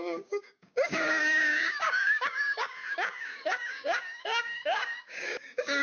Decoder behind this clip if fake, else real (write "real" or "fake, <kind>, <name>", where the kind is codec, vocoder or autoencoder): fake, codec, DAC